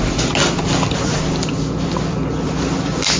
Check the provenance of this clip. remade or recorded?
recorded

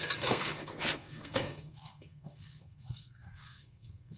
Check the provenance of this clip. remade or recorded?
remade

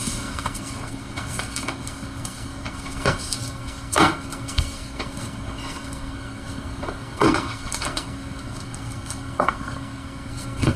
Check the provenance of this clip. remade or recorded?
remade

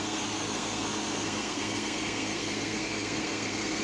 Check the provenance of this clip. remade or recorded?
remade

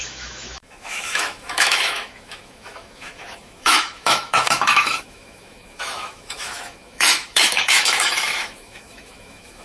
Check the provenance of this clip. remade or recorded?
remade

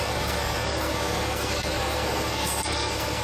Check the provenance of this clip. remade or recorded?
remade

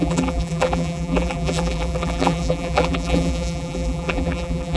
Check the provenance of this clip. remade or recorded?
remade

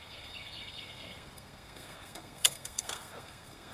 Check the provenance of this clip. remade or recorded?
remade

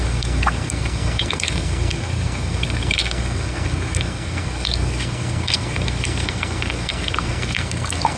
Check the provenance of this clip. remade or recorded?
remade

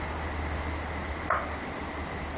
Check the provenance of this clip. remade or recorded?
recorded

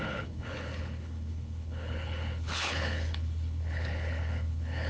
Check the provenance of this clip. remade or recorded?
remade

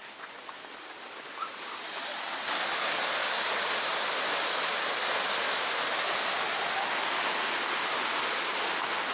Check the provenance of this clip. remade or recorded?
recorded